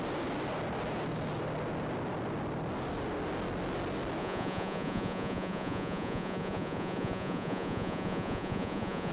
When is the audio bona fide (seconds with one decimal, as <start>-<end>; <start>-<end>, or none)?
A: 0.0-4.2